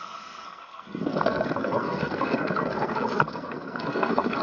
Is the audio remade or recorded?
remade